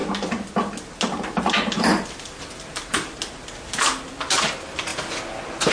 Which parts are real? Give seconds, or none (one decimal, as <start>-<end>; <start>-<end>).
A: 0.0-5.7